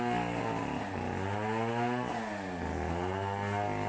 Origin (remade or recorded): recorded